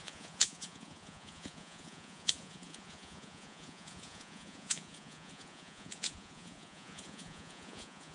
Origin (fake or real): fake